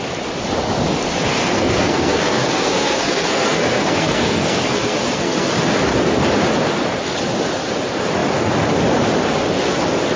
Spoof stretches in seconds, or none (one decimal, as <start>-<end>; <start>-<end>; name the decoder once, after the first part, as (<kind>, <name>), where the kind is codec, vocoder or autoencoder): 1.4-5.5 (codec, SNAC)